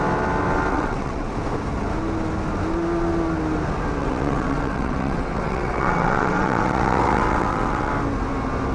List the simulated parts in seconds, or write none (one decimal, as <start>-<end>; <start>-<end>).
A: 0.7-1.3; 4.0-7.9